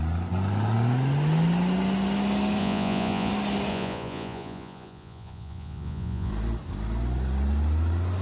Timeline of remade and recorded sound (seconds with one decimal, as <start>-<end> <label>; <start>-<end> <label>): 0.0-2.6 recorded; 2.6-3.3 remade; 3.3-3.7 recorded; 3.7-6.3 remade; 6.3-8.2 recorded